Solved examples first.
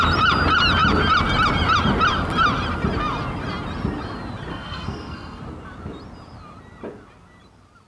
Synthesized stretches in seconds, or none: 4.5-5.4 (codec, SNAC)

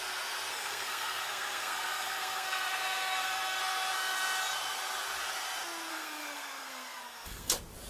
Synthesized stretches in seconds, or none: 0.5-3.6 (codec, SNAC); 5.9-7.5

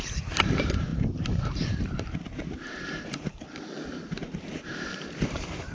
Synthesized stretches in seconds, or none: 0.0-5.7 (vocoder, BigVGAN v2)

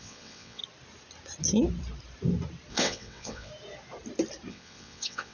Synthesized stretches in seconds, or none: 0.0-0.6 (vocoder, WaveNeXt); 2.7-3.5; 4.5-5.3

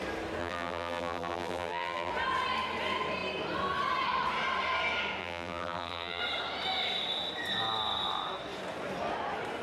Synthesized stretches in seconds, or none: 0.4-2.1 (vocoder, BigVGAN v2); 5.2-6.2